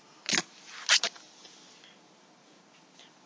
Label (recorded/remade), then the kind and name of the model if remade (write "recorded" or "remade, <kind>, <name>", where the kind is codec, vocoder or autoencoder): recorded